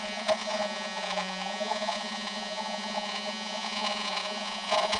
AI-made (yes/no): yes